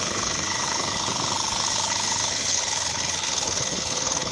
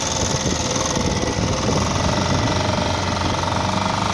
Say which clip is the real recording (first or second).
second